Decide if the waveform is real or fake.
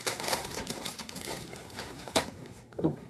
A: fake